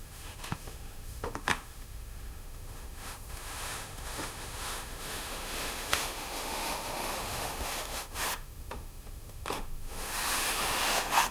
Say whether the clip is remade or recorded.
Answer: remade